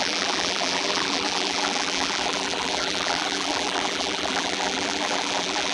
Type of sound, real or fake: fake